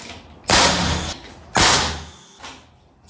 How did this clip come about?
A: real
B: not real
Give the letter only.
A